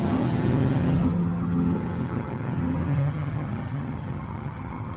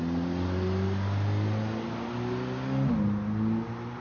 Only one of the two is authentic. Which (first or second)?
second